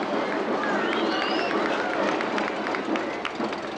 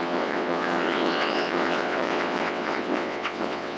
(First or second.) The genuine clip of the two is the first